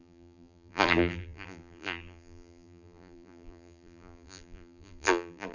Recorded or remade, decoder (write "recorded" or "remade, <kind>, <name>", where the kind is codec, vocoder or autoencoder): remade, vocoder, BigVGAN v2